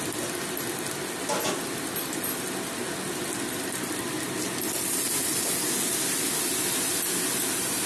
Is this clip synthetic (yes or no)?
no